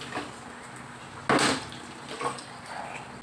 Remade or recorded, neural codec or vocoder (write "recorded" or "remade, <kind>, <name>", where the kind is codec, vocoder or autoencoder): recorded